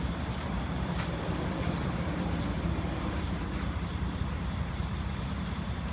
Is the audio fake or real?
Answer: fake